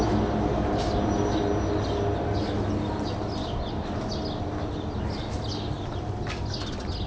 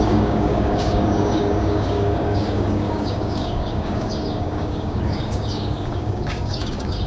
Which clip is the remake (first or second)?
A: second